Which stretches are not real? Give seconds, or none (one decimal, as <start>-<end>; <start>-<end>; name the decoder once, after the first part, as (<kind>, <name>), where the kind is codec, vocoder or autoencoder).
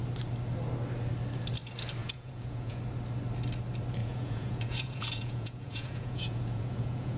2.0-2.8 (vocoder, Vocos); 4.0-7.2